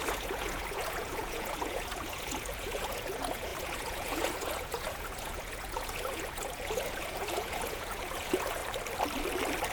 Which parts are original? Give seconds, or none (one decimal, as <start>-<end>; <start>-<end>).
8.6-9.7